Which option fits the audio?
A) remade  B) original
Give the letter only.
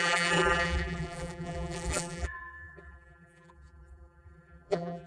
A